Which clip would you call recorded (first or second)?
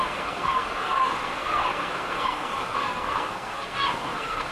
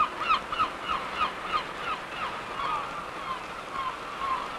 second